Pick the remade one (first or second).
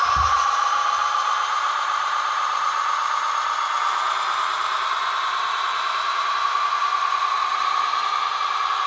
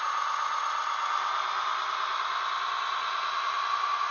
first